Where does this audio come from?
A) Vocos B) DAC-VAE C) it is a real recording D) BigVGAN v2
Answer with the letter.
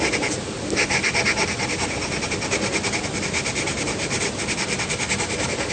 C